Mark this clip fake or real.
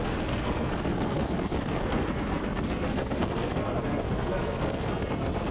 fake